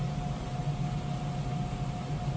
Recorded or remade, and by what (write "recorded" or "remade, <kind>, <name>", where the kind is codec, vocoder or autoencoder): recorded